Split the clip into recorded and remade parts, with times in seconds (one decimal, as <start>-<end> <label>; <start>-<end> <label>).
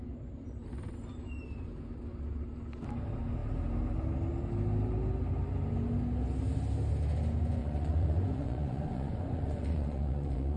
0.0-7.6 recorded; 7.6-10.6 remade